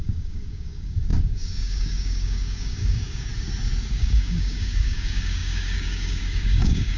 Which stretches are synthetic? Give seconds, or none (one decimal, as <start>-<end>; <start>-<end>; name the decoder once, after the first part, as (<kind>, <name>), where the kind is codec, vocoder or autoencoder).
0.0-3.3 (codec, DAC); 3.9-7.0